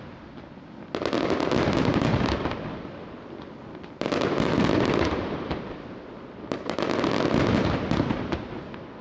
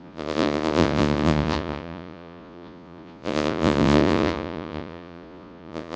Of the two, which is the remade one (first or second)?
second